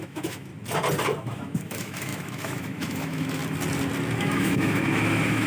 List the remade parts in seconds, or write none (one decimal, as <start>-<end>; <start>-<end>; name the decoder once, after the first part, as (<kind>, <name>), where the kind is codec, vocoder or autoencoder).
0.0-0.5 (autoencoder, DAC-VAE); 1.3-3.4; 4.2-5.5